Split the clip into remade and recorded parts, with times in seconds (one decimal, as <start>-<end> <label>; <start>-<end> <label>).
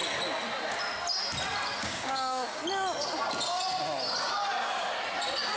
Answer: 0.0-1.8 recorded; 1.8-2.6 remade; 2.6-5.6 recorded